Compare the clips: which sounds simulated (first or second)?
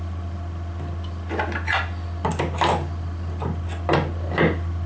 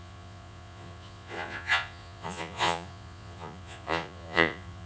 second